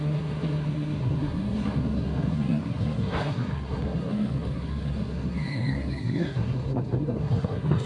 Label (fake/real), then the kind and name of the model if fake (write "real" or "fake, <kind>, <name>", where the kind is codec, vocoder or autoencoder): fake, codec, SNAC